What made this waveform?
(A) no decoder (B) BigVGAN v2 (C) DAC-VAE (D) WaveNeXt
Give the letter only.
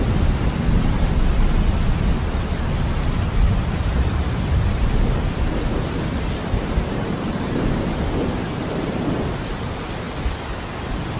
A